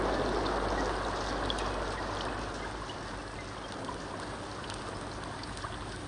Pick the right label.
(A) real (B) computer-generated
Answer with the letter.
A